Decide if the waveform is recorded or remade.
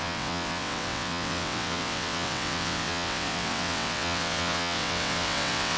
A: remade